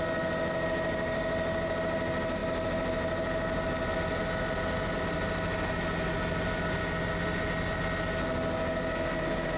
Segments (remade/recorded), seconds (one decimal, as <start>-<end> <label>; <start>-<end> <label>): 0.0-9.6 recorded